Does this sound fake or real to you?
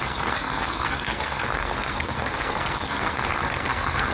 fake